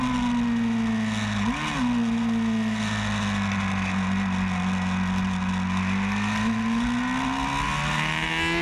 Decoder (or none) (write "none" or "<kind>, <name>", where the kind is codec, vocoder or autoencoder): none